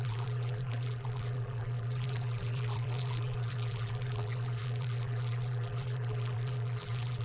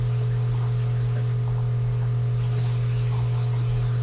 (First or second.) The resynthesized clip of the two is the first